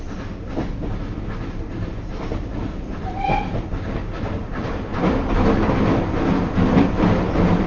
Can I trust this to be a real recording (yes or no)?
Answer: yes